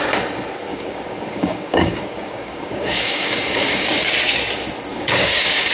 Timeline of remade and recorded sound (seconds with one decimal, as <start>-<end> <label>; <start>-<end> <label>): 0.0-0.7 recorded; 0.7-4.1 remade; 4.1-4.9 recorded; 4.9-5.7 remade